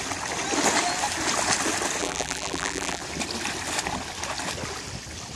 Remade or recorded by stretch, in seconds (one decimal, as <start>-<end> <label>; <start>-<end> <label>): 0.0-2.0 recorded; 2.0-3.0 remade; 3.0-5.4 recorded